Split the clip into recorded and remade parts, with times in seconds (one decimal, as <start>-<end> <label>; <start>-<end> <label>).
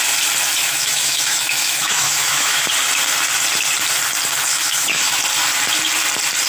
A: 0.0-0.6 recorded; 0.6-2.7 remade; 2.7-4.5 recorded; 4.5-5.2 remade; 5.2-6.5 recorded